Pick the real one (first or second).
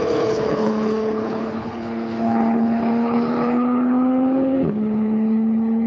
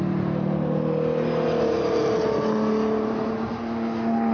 second